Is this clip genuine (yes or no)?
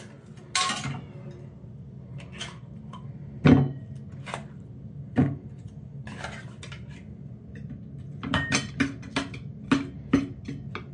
yes